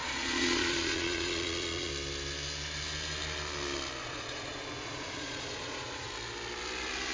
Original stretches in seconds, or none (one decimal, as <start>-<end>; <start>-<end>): 1.9-4.0; 6.1-7.1